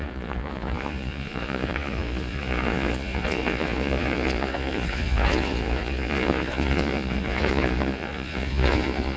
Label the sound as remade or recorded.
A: remade